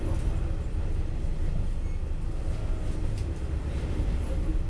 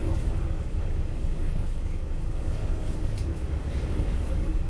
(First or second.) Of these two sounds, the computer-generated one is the second